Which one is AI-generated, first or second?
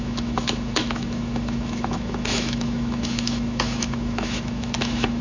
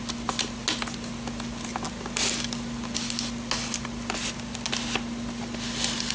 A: first